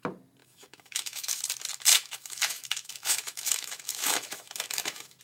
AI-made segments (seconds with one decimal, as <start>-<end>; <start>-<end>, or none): 0.4-1.4; 1.9-5.2